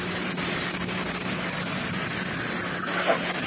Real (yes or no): no